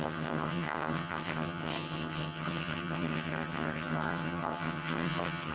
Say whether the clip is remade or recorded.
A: remade